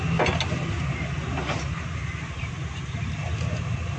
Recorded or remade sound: recorded